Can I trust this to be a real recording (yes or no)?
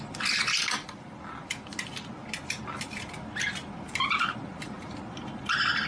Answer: yes